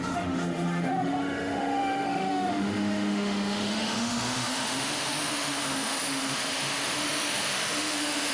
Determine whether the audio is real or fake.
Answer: fake